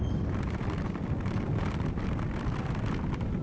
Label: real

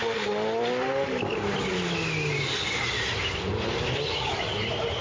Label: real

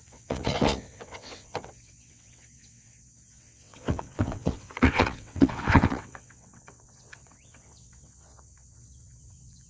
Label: fake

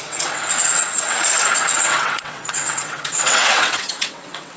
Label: fake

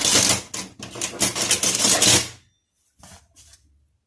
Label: real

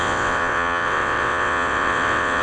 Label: fake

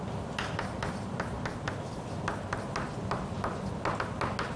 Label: real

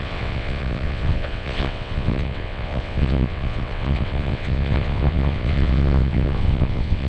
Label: fake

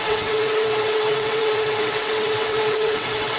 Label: fake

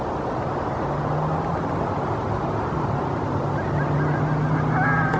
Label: real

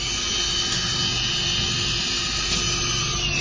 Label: real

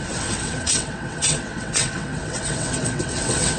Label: fake